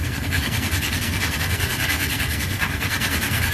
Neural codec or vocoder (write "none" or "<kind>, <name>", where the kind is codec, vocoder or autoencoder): codec, SNAC